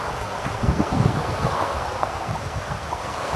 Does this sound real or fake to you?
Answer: fake